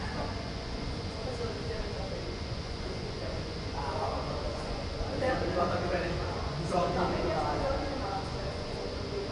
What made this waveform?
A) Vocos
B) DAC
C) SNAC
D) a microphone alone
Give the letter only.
A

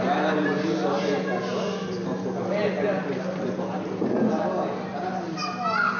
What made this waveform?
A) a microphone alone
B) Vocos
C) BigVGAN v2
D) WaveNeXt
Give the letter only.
A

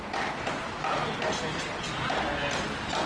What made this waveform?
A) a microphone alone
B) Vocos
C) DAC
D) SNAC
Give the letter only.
A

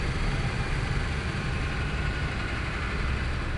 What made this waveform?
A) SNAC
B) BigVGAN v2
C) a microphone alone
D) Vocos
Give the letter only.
C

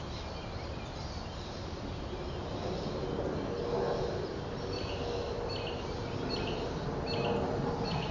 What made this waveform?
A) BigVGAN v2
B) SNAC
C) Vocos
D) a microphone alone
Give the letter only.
D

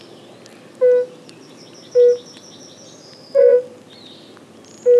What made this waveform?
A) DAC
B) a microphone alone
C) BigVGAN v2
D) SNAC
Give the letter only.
B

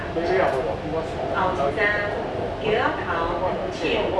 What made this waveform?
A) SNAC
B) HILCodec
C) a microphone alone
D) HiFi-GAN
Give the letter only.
C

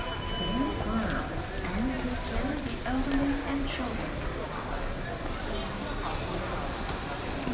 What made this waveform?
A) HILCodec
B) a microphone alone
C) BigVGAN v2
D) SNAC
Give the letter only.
B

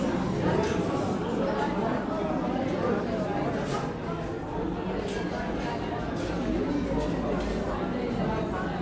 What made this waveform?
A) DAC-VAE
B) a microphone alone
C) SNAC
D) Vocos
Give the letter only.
B